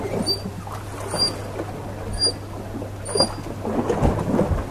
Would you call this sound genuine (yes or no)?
yes